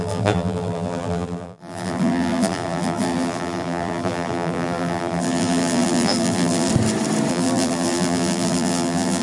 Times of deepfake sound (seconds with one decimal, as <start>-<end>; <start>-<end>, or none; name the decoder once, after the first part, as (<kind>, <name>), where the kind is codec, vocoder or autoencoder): 0.0-6.7 (vocoder, BigVGAN v2); 7.3-9.2